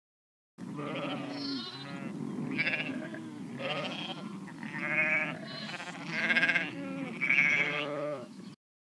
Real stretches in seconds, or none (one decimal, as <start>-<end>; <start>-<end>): 0.0-7.7; 8.5-8.9